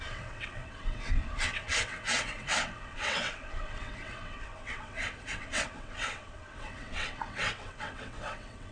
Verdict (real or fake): fake